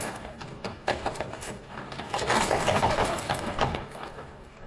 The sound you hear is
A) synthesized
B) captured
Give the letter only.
A